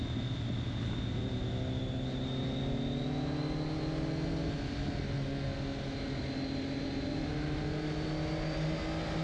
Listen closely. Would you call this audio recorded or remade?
recorded